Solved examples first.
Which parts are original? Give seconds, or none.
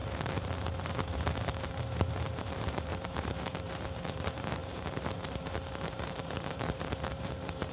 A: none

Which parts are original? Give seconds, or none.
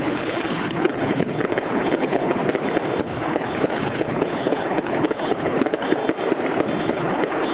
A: 2.4-3.0; 6.0-6.8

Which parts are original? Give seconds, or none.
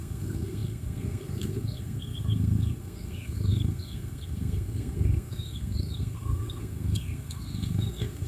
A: none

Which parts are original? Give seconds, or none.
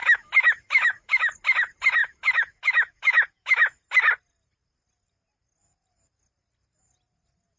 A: 1.3-2.0; 3.8-7.6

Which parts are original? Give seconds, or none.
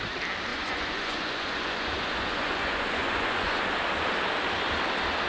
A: 0.0-0.5; 3.7-5.3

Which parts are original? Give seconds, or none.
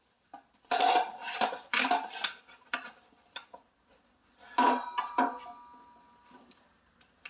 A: 0.0-1.7; 2.8-7.3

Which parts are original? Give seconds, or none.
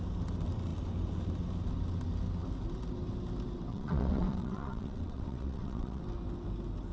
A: 0.0-3.7; 6.0-6.9